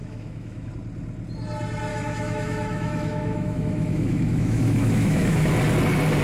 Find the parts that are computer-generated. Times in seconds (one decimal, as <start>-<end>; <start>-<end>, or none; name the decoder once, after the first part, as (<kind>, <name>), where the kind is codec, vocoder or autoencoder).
0.0-0.7 (autoencoder, DAC-VAE); 1.9-5.5